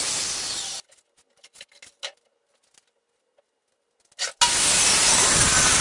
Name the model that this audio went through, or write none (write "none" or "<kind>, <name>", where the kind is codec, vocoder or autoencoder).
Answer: none